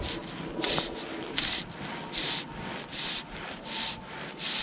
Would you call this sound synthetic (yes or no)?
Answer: no